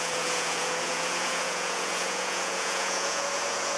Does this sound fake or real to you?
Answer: fake